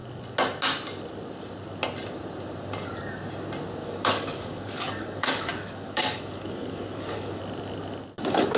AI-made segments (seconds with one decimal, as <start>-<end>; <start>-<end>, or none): 3.8-7.4